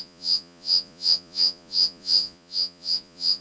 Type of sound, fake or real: fake